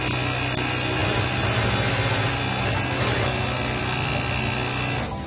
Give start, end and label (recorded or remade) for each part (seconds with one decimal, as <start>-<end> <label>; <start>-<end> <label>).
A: 0.0-5.3 recorded